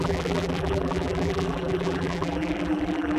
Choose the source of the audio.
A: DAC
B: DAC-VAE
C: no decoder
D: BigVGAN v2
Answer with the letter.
D